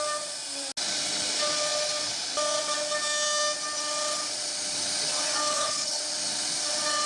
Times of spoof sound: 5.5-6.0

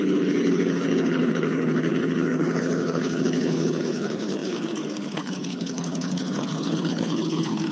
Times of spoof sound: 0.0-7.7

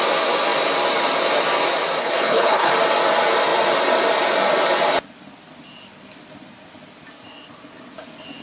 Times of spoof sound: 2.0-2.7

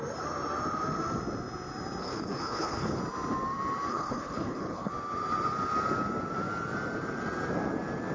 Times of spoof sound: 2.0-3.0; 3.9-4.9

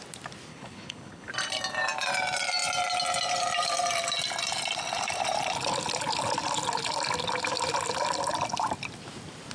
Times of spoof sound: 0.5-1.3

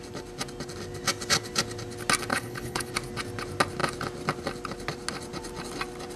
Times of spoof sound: 2.3-2.9